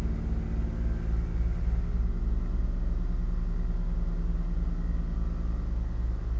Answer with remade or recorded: recorded